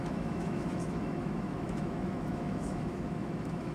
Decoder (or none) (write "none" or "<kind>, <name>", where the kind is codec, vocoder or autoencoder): autoencoder, DAC-VAE